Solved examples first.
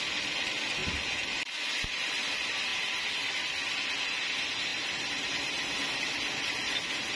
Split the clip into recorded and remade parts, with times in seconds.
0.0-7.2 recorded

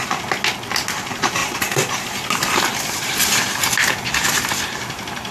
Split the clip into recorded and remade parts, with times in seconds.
0.0-5.3 recorded

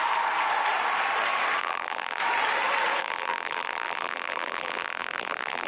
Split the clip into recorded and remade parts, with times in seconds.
0.0-1.6 recorded; 1.6-2.2 remade; 2.2-3.0 recorded; 3.0-5.7 remade

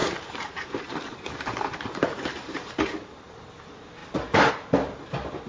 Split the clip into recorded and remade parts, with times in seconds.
0.0-3.3 remade; 3.3-4.0 recorded; 4.0-4.5 remade; 4.5-5.5 recorded